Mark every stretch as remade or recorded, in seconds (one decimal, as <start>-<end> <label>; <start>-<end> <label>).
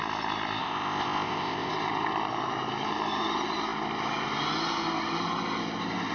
0.0-0.6 recorded; 0.6-1.7 remade; 1.7-6.1 recorded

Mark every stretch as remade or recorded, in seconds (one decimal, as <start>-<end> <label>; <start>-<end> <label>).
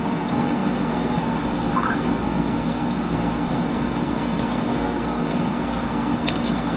0.0-6.8 remade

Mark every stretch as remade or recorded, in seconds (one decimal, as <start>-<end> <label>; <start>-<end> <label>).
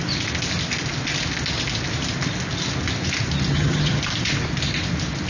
0.0-3.5 recorded; 3.5-4.0 remade; 4.0-5.3 recorded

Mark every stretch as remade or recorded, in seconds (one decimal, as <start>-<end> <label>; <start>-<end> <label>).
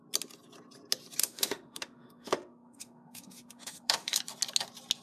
0.0-1.2 recorded; 1.2-4.2 remade; 4.2-5.0 recorded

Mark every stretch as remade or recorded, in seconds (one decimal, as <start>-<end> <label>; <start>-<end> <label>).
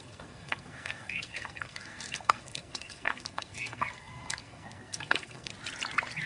0.0-5.5 remade; 5.5-6.3 recorded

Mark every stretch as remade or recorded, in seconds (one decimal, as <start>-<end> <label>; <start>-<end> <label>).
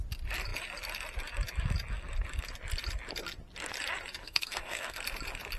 0.0-4.2 recorded; 4.2-5.0 remade; 5.0-5.6 recorded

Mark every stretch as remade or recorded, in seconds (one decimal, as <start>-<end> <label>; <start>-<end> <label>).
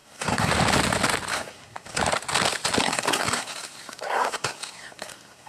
0.0-0.5 remade; 0.5-1.3 recorded; 1.3-2.0 remade; 2.0-2.8 recorded; 2.8-5.5 remade